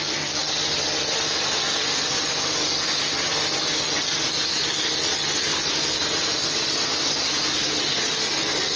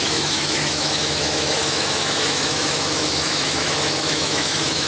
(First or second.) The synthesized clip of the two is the second